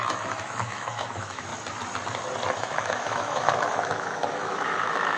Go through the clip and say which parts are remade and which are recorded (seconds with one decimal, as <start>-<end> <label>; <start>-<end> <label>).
0.0-1.5 remade; 1.5-2.5 recorded; 2.5-5.2 remade